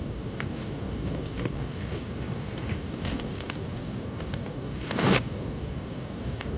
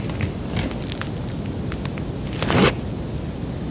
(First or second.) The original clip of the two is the second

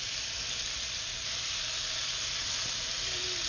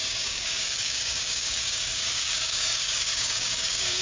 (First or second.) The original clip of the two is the first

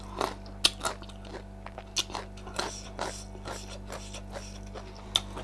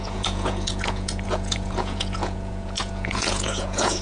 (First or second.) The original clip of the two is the first